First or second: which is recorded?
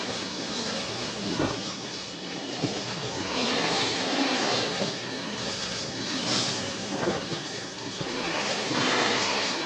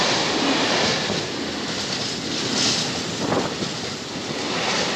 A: second